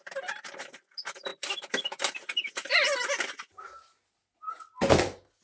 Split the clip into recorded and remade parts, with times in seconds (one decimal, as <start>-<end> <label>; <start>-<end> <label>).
0.0-1.3 recorded; 1.3-2.5 remade; 2.5-5.4 recorded